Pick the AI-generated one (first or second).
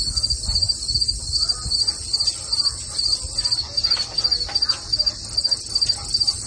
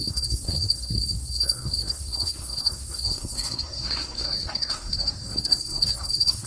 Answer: second